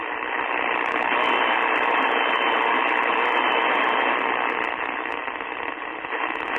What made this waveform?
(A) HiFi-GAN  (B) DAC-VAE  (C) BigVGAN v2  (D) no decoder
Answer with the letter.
D